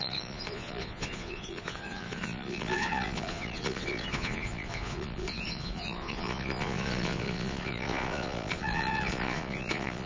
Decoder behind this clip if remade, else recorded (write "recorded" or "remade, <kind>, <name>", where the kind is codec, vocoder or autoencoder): remade, vocoder, Vocos